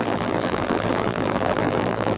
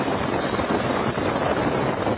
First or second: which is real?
second